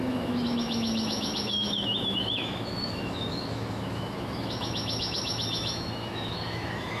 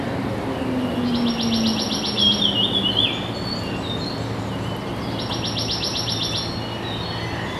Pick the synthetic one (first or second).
first